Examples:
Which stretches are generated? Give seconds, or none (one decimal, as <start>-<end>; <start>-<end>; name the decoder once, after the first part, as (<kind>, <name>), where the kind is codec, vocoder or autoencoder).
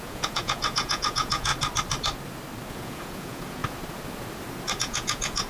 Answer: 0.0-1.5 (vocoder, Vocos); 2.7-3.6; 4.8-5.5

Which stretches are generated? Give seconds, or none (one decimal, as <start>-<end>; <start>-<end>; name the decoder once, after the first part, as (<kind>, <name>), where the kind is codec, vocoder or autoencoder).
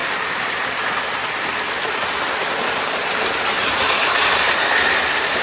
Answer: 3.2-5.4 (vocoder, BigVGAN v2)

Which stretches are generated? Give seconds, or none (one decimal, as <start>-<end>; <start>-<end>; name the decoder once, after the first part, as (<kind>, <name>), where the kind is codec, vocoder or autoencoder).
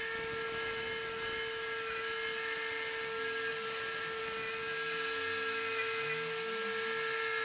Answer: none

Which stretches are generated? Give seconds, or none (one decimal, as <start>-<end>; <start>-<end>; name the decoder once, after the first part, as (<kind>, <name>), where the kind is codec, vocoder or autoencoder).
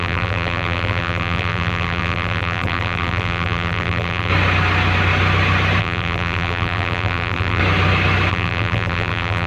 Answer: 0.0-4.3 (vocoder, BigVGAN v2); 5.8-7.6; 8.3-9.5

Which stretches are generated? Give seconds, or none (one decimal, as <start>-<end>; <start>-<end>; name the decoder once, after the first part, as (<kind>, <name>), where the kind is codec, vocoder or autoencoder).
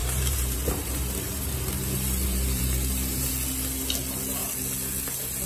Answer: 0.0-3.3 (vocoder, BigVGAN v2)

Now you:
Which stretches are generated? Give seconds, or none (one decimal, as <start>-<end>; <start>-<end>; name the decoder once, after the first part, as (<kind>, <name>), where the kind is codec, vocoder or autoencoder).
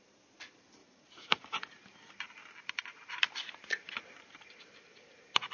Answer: 0.8-1.4 (vocoder, BigVGAN v2)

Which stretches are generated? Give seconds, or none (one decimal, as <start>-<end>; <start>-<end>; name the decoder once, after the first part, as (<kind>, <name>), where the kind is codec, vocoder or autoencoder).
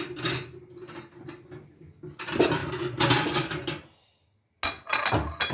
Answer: none